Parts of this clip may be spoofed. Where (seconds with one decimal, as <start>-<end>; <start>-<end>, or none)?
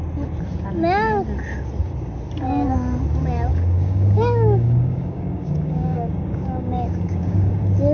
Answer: 3.5-7.5